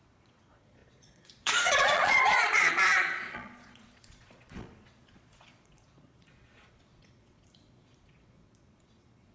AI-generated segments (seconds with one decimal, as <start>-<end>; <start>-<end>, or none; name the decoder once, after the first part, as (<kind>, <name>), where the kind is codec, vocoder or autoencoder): 0.0-9.3 (vocoder, Vocos)